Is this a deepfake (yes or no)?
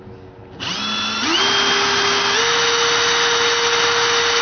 no